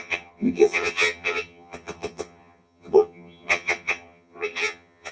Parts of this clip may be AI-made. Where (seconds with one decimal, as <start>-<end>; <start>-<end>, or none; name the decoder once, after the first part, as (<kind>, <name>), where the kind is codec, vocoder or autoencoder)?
0.0-5.1 (vocoder, HiFi-GAN)